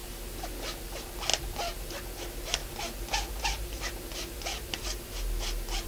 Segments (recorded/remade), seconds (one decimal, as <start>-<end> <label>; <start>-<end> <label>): 0.0-5.9 recorded